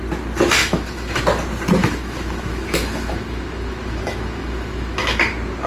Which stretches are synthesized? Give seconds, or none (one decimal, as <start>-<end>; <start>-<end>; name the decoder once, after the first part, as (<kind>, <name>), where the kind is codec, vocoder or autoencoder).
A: 0.6-1.2 (autoencoder, DAC-VAE); 1.8-5.2